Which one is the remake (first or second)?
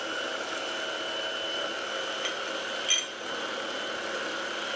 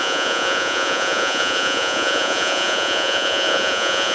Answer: second